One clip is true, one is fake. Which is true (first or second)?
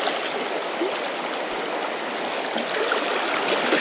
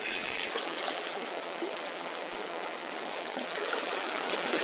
first